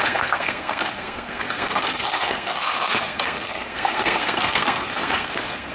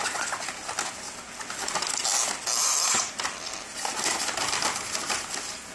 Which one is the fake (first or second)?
first